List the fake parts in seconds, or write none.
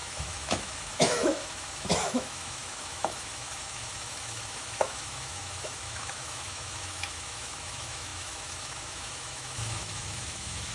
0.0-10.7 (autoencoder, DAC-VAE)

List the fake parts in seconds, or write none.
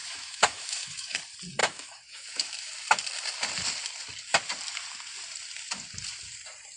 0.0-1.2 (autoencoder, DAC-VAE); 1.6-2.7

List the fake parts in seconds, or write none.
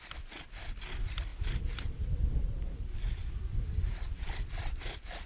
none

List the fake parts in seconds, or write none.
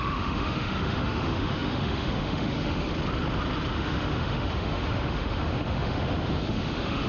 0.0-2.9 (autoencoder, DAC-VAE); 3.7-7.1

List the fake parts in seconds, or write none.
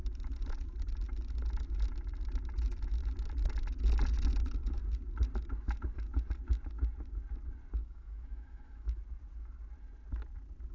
7.8-9.0 (autoencoder, DAC-VAE)